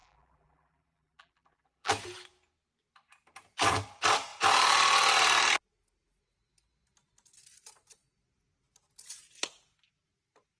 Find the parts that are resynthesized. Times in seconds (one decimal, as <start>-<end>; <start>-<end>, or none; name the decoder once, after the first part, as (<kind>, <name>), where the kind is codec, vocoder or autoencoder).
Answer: 0.0-1.9 (vocoder, BigVGAN v2)